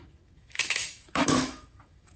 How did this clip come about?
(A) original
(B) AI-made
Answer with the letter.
B